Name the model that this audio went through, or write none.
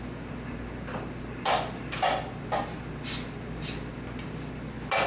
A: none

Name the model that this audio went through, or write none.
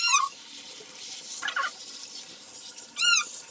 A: none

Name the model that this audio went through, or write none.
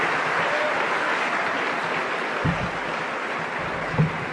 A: none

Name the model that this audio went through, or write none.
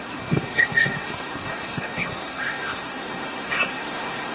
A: codec, SNAC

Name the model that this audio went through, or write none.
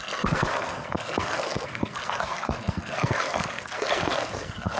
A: codec, SNAC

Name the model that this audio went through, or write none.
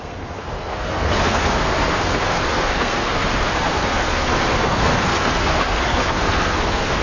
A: codec, SNAC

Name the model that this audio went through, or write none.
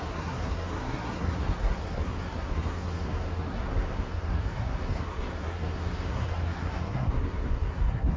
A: codec, SNAC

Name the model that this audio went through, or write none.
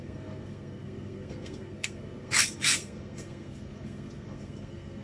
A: codec, SNAC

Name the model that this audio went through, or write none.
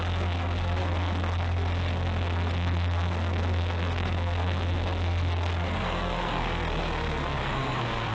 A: codec, SNAC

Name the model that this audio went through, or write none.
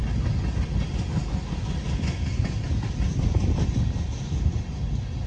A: none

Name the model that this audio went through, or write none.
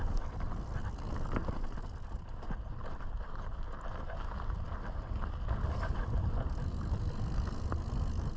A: none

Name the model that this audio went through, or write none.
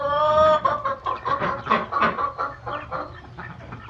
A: none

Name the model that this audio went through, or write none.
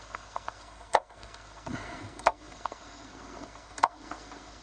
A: codec, SNAC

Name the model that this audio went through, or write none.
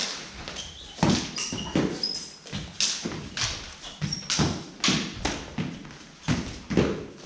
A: none